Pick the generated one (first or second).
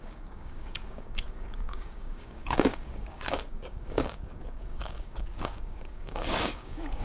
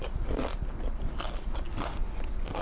first